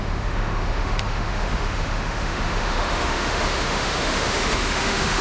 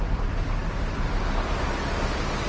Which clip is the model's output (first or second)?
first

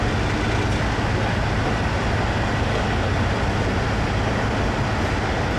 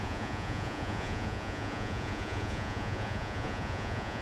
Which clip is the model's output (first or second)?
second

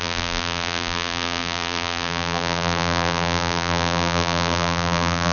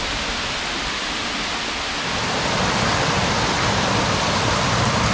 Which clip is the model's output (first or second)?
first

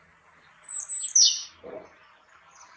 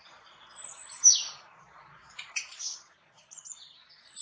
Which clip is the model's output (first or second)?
second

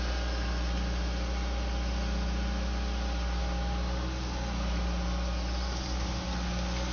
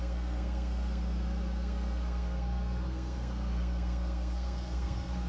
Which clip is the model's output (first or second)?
second